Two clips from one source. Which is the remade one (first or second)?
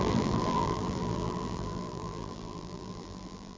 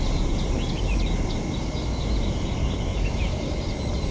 first